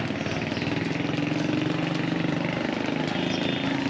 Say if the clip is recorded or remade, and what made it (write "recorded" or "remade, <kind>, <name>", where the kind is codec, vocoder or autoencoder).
recorded